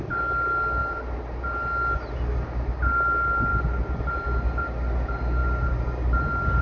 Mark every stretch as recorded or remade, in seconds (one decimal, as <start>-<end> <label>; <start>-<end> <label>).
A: 0.0-6.6 recorded